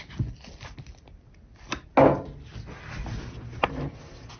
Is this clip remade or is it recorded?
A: recorded